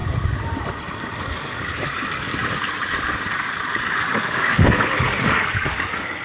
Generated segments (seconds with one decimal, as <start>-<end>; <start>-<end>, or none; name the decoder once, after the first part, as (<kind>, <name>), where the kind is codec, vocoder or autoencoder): 1.2-2.3 (codec, DAC); 4.1-6.2